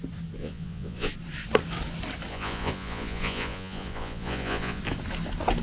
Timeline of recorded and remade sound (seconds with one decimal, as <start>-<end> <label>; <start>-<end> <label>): 0.0-0.4 recorded; 0.4-1.1 remade; 1.1-2.3 recorded; 2.3-4.8 remade; 4.8-5.6 recorded